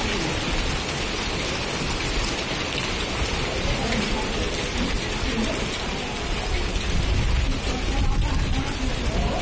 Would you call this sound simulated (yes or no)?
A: no